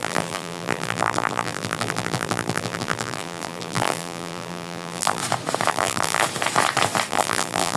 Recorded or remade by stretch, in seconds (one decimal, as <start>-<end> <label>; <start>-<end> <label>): 0.0-5.2 remade; 5.2-5.7 recorded; 5.7-6.2 remade; 6.2-7.1 recorded; 7.1-7.8 remade